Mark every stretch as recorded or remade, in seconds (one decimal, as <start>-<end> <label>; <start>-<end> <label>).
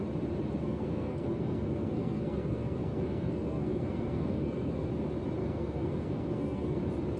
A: 0.0-0.6 recorded; 0.6-4.9 remade; 4.9-5.4 recorded; 5.4-6.8 remade; 6.8-7.2 recorded